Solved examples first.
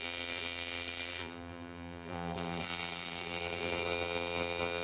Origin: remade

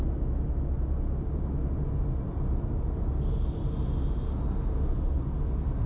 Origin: recorded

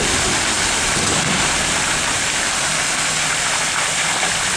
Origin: recorded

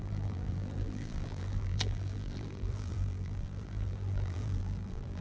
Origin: remade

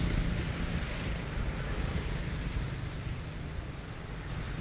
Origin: recorded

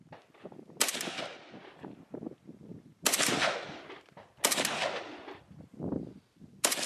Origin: recorded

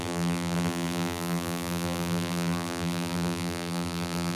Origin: remade